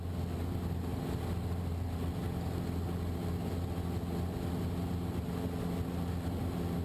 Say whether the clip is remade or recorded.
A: recorded